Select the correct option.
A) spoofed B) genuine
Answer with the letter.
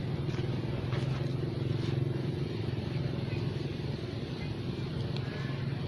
B